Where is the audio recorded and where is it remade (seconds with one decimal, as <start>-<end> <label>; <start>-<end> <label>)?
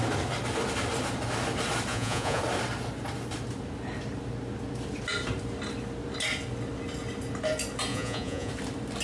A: 0.0-1.9 recorded; 1.9-2.4 remade; 2.4-7.9 recorded; 7.9-8.5 remade; 8.5-9.0 recorded